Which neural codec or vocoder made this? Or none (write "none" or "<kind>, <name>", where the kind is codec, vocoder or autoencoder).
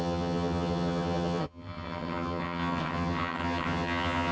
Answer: vocoder, HiFi-GAN